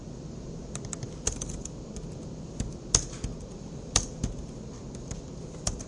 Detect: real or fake real